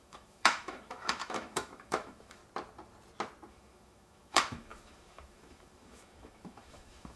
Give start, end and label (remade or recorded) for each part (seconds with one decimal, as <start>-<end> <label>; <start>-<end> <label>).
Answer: 0.0-2.4 remade; 2.4-3.5 recorded; 3.5-7.2 remade